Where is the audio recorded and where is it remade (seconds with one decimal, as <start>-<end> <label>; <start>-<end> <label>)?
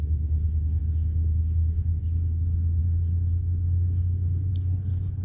0.0-0.8 recorded; 0.8-2.0 remade; 2.0-2.8 recorded; 2.8-4.5 remade; 4.5-5.2 recorded